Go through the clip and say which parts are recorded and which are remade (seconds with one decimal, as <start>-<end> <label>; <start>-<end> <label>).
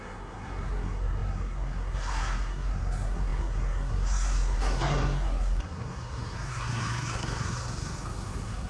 0.0-8.7 remade